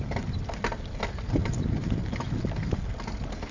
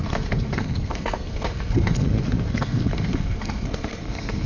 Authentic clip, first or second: first